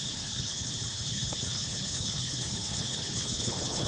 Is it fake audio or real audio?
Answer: fake